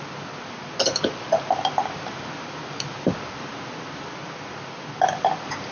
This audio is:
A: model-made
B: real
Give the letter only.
B